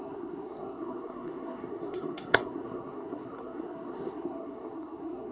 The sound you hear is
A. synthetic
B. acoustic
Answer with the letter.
A